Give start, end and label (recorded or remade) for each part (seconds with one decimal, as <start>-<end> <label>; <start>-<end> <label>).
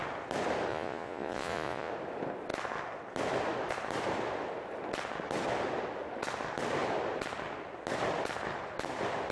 0.0-0.7 recorded; 0.7-1.9 remade; 1.9-9.3 recorded